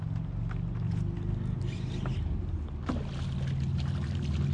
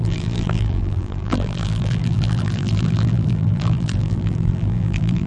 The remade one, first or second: second